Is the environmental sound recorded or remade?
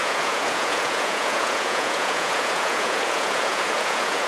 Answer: remade